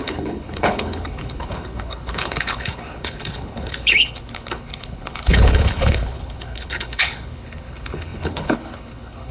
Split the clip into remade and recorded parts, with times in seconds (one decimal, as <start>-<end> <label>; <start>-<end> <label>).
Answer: 0.0-9.3 remade